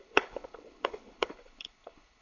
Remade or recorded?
remade